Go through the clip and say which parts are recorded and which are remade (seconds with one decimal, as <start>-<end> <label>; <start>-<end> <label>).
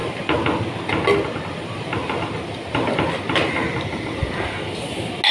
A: 0.0-5.3 recorded